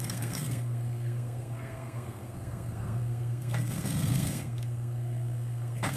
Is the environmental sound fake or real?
fake